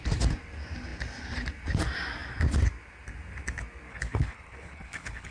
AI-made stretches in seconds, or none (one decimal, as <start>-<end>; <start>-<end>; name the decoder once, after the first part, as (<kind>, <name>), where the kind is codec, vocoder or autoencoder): 3.9-5.3 (codec, HILCodec)